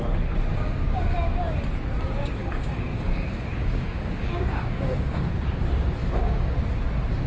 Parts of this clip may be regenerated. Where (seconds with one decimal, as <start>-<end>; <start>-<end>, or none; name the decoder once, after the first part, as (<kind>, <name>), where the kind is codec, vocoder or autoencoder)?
0.5-1.0 (codec, DAC); 2.4-5.3; 6.0-6.6